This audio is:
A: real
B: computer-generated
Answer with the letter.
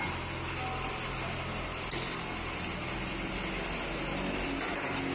A